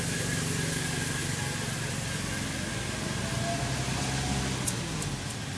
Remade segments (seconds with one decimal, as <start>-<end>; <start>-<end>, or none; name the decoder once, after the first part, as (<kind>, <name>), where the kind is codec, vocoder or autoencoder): none